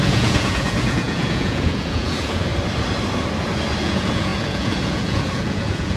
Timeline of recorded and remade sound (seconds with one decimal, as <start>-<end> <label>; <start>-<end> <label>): 0.0-2.5 remade; 2.5-3.8 recorded; 3.8-6.0 remade